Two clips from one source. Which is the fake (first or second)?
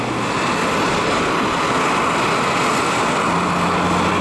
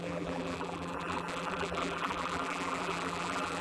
second